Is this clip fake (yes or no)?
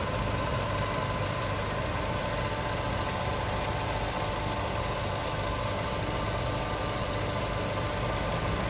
no